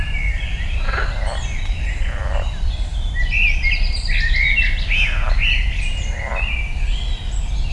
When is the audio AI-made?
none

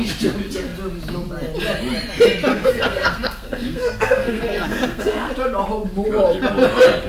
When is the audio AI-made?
2.5-5.3 (codec, SNAC)

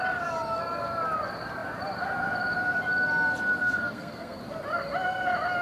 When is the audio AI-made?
3.6-4.4 (codec, SNAC)